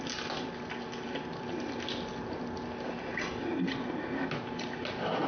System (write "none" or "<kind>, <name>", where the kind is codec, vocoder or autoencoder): none